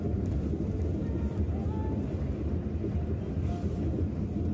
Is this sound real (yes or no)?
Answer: yes